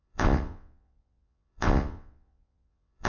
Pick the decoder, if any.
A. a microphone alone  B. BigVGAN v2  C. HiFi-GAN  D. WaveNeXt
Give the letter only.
D